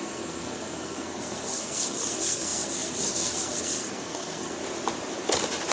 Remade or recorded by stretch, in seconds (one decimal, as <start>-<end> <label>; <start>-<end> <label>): 0.0-4.6 remade; 4.6-5.7 recorded